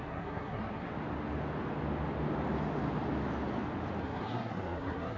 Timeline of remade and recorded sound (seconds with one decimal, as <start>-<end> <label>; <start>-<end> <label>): 0.0-0.9 remade; 0.9-4.0 recorded; 4.0-5.2 remade